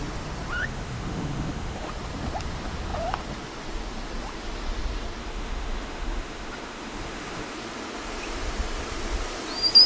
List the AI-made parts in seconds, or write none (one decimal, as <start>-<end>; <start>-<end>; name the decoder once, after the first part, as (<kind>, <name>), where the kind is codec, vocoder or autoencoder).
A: 0.6-1.9 (autoencoder, DAC-VAE); 5.2-7.6